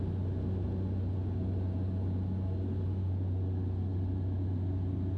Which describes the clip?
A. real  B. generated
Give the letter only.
A